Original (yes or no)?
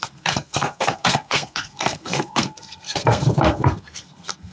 no